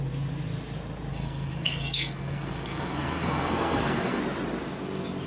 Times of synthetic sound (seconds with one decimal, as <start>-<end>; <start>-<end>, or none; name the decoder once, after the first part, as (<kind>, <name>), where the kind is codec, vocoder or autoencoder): 1.1-4.2 (codec, SNAC)